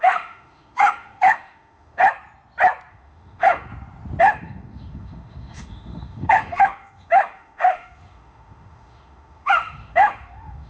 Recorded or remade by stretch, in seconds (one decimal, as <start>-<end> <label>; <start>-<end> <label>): 0.0-2.0 remade; 2.0-2.9 recorded; 2.9-3.7 remade; 3.7-4.2 recorded; 4.2-10.7 remade